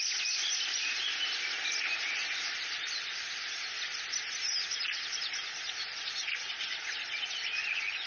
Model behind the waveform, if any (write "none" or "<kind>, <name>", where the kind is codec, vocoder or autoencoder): vocoder, BigVGAN v2